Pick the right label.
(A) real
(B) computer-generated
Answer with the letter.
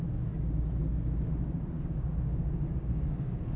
B